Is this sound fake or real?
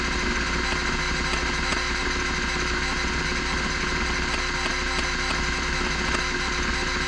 real